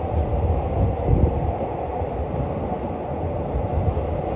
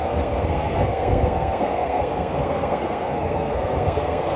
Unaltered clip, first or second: first